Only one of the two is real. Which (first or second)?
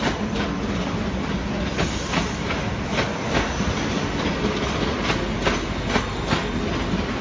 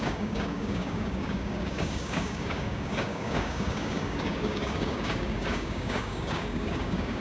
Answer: first